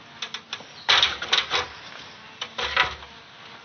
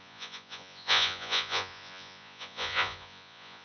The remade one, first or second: second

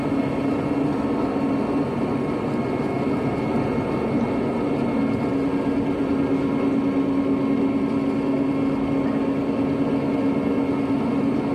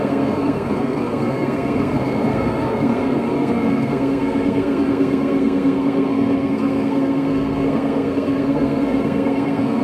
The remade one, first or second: second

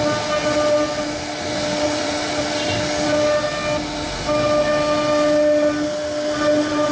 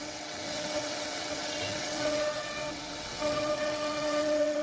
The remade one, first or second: second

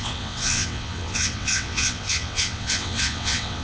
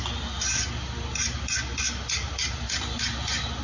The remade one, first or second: first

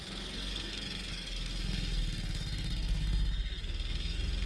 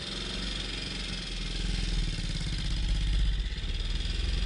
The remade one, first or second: first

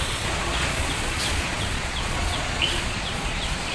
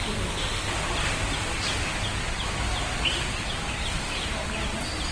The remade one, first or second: first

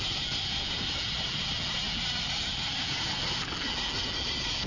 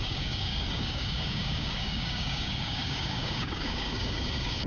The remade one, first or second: second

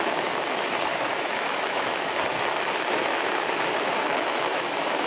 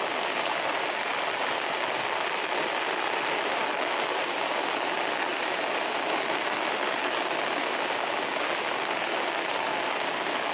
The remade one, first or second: first